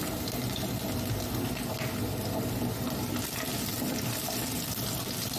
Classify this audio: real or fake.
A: real